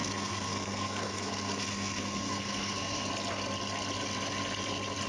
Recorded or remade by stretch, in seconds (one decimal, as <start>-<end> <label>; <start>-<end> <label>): 0.0-3.1 remade; 3.1-5.1 recorded